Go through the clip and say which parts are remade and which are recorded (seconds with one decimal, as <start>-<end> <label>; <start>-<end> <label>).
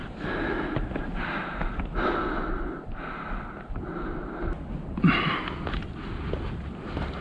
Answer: 0.0-7.2 recorded